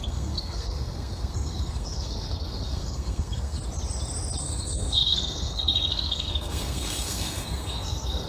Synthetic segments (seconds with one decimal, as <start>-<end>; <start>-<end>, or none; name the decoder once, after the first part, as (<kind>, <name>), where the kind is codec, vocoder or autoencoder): 0.0-3.6 (codec, SNAC); 4.4-8.3